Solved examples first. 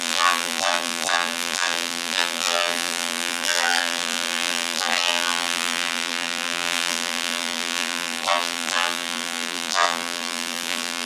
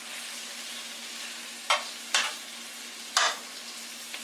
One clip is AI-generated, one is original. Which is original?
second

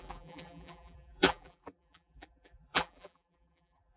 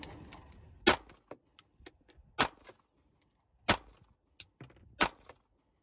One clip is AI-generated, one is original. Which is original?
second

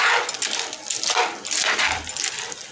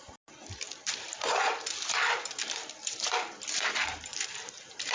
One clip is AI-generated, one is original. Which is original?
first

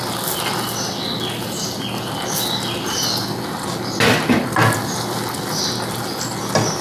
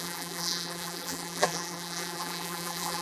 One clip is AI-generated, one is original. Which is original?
first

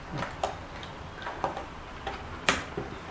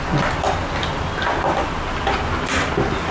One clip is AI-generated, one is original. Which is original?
second